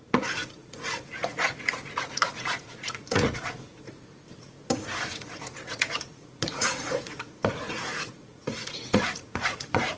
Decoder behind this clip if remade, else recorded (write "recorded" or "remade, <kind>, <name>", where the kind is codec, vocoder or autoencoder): remade, vocoder, Vocos